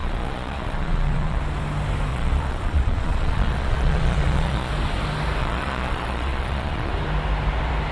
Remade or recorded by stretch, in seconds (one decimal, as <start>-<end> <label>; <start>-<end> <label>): 0.0-1.4 remade; 1.4-2.1 recorded; 2.1-4.7 remade; 4.7-5.4 recorded; 5.4-6.9 remade; 6.9-7.9 recorded